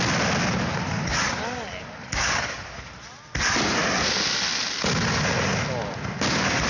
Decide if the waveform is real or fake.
real